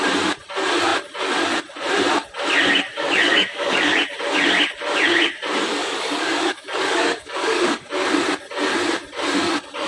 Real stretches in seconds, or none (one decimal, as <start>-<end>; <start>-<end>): 0.0-2.9; 4.0-5.8; 7.9-9.9